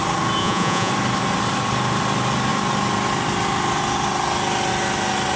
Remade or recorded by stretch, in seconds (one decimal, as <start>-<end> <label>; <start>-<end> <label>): 0.0-0.4 recorded; 0.4-0.9 remade; 0.9-5.4 recorded